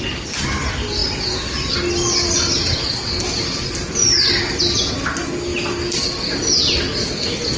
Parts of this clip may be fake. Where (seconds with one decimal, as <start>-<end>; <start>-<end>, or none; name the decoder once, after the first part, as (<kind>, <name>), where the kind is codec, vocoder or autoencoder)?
3.9-4.6 (vocoder, BigVGAN v2)